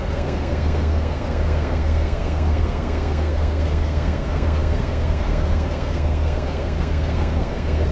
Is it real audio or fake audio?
fake